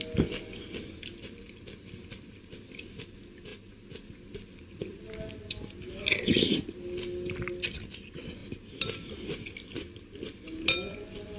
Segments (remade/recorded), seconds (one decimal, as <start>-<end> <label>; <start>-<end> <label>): 0.0-8.4 recorded; 8.4-9.5 remade; 9.5-11.4 recorded